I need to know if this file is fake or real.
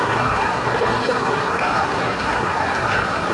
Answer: fake